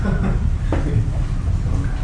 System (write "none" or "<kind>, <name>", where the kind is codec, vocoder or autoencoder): none